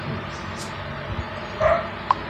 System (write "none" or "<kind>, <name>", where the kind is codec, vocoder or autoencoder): none